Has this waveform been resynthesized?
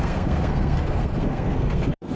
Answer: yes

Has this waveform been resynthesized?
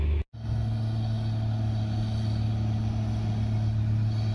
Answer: no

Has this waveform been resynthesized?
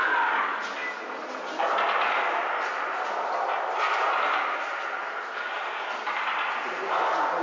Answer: no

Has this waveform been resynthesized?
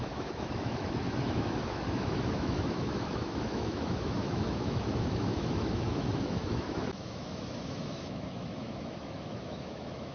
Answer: yes